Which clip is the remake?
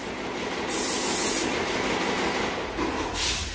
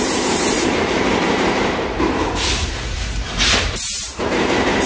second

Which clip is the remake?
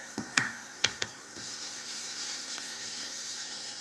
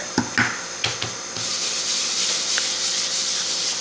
first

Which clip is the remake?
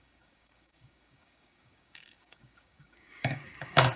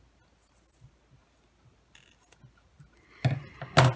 first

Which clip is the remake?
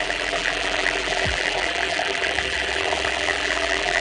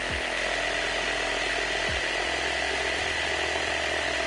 first